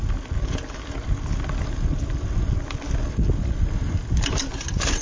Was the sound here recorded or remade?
recorded